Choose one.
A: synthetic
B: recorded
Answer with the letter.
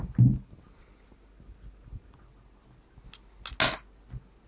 B